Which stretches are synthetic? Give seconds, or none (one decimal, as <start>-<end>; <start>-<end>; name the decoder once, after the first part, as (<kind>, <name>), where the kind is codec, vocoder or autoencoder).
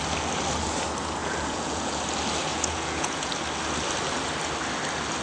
1.2-2.0 (vocoder, Vocos); 2.5-3.3